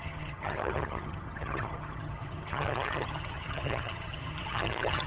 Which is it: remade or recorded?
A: remade